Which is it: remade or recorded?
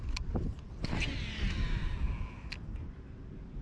recorded